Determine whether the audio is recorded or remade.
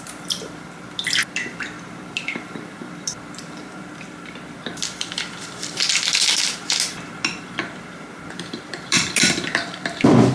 remade